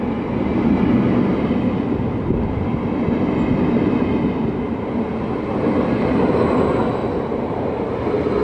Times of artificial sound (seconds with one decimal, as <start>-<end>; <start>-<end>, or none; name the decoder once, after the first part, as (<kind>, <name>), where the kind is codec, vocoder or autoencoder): 7.0-7.8 (vocoder, BigVGAN v2)